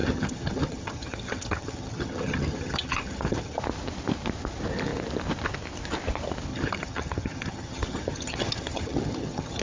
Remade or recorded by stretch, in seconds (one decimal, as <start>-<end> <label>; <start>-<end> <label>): 0.0-3.6 remade; 3.6-6.5 recorded; 6.5-9.6 remade